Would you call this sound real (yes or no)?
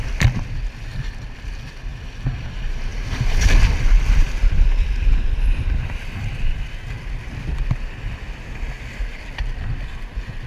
yes